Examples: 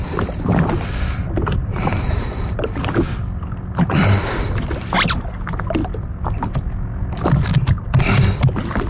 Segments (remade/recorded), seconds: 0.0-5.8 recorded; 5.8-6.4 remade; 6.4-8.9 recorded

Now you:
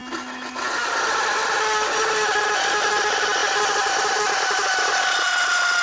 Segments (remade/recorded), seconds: 0.0-5.8 recorded